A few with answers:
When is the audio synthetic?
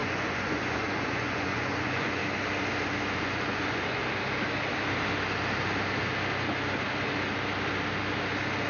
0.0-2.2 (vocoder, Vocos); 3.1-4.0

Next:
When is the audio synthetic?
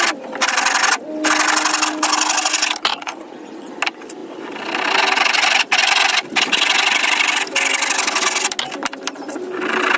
2.9-3.7 (vocoder, Vocos)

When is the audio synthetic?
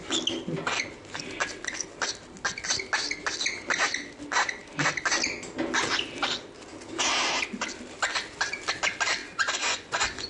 9.2-10.3 (vocoder, Vocos)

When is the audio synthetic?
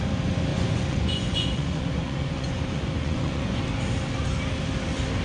0.5-3.6 (vocoder, Vocos)